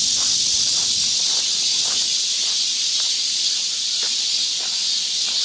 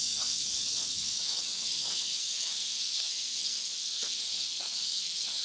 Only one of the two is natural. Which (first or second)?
first